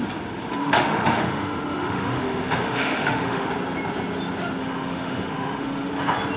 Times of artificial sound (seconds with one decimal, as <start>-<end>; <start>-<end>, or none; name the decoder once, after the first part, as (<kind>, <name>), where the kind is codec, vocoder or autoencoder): 0.6-3.5 (autoencoder, DAC-VAE); 4.6-5.9